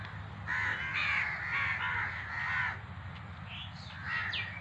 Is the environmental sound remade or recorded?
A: recorded